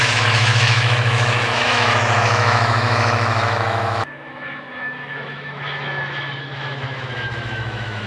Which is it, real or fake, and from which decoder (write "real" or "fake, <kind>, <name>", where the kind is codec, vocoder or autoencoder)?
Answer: fake, autoencoder, DAC-VAE